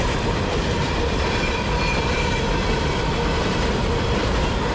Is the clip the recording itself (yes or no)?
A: no